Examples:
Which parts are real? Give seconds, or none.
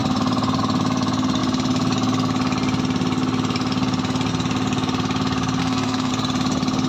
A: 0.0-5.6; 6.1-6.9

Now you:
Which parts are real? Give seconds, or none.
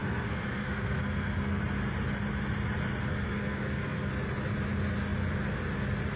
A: 1.6-3.1; 4.1-6.2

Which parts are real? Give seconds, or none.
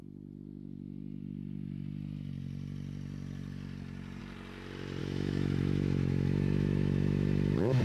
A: 0.0-5.0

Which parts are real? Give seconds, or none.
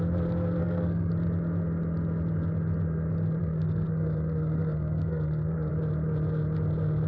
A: 0.0-0.6; 1.1-3.4; 5.7-7.1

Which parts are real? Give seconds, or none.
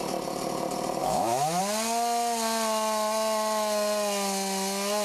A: 0.0-1.0; 1.6-5.0